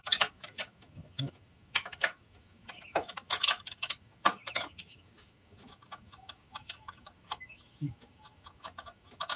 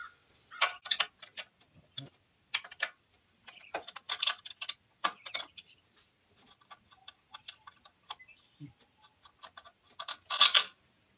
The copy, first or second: first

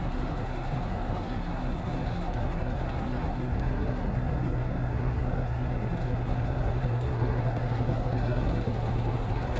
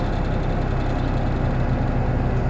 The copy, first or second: first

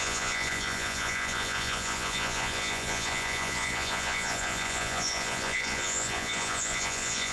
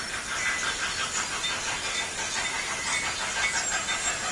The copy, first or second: first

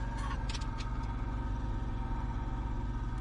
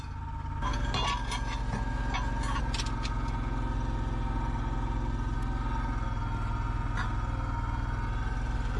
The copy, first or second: first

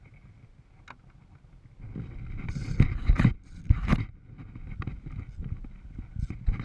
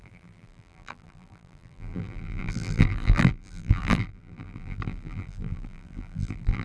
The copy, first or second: second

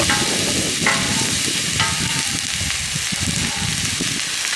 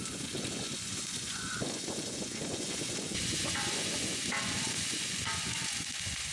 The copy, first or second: second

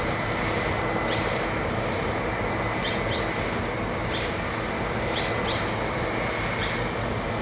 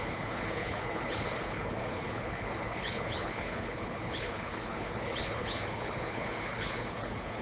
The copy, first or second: second